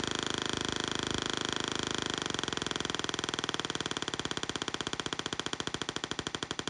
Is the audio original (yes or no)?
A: yes